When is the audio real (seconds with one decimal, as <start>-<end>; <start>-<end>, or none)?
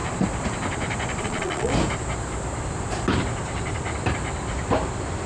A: 0.0-1.2; 1.7-5.3